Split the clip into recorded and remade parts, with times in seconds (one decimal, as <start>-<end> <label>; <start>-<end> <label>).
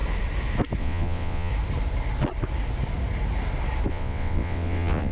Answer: 0.0-0.8 recorded; 0.8-1.5 remade; 1.5-3.9 recorded; 3.9-5.1 remade